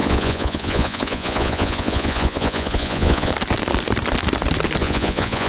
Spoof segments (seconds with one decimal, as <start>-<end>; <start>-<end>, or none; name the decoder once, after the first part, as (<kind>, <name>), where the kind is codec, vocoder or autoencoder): 0.0-3.3 (vocoder, Vocos); 4.8-5.5